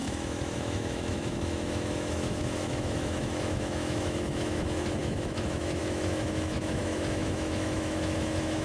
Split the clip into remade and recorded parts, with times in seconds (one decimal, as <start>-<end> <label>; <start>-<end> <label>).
0.0-8.6 remade